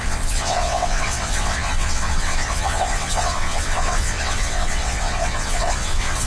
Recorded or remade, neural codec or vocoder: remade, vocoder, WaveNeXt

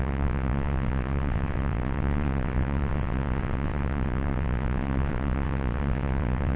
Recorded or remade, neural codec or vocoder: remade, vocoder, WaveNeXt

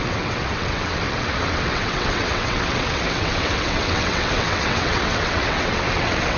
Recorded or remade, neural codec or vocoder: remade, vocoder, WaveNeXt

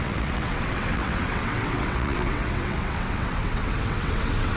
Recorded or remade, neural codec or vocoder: remade, vocoder, WaveNeXt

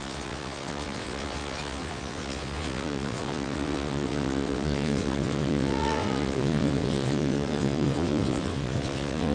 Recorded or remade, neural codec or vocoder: remade, vocoder, WaveNeXt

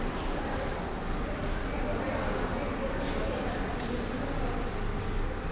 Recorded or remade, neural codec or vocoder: recorded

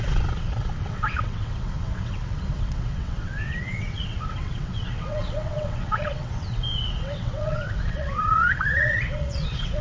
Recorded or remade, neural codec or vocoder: remade, vocoder, WaveNeXt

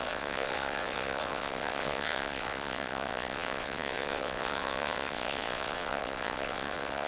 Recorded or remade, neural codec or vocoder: remade, vocoder, WaveNeXt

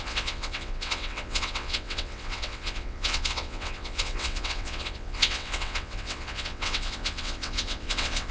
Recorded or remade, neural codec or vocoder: remade, vocoder, WaveNeXt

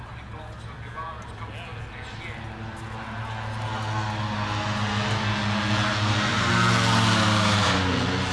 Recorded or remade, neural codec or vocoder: recorded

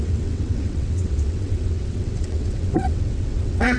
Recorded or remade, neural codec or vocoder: remade, vocoder, WaveNeXt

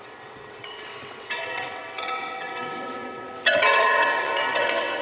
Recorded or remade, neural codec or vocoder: remade, vocoder, WaveNeXt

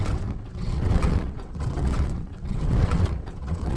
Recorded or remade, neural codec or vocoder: remade, vocoder, WaveNeXt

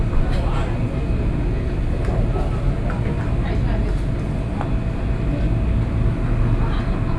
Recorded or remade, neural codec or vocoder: recorded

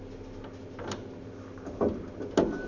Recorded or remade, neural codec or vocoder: recorded